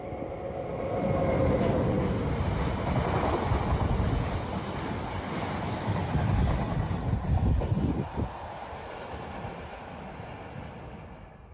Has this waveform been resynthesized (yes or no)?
no